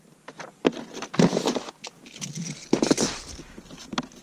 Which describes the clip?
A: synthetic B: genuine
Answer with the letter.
B